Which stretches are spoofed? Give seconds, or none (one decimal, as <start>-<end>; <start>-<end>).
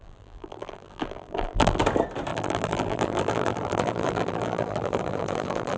0.0-1.8; 2.3-5.8